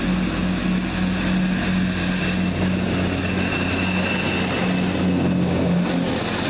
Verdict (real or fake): real